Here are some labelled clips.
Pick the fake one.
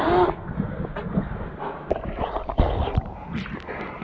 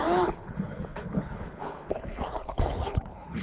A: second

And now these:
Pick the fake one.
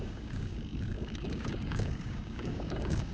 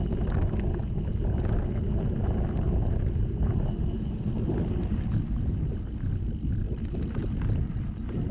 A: first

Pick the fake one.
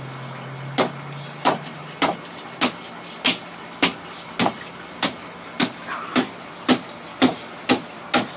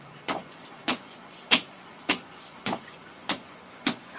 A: second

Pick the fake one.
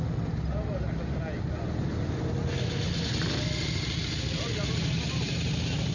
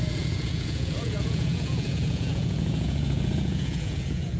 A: second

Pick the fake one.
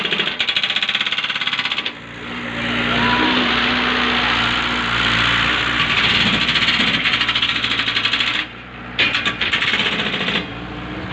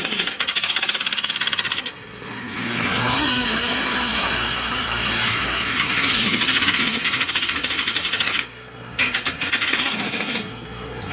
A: second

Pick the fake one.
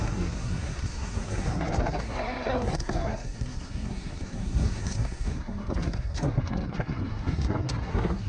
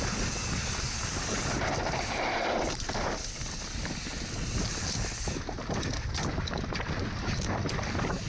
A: first